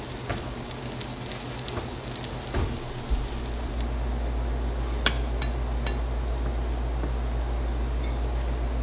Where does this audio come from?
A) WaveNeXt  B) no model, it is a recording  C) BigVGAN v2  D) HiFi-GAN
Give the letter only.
B